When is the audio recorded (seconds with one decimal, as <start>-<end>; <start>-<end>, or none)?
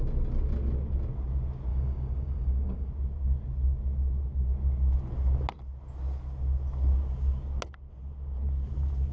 0.0-1.7; 2.9-9.1